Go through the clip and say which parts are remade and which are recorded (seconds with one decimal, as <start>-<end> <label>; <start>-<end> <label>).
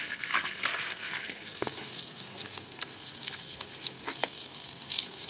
0.0-5.3 remade